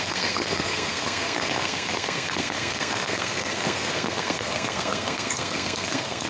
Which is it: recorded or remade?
remade